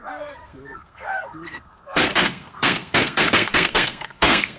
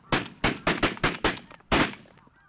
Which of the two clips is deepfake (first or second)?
first